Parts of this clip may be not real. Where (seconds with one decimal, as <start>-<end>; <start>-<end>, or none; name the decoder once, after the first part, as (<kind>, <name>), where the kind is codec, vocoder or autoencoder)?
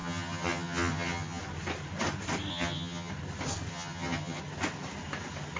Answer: 0.0-1.4 (vocoder, HiFi-GAN); 2.5-3.1; 3.7-4.4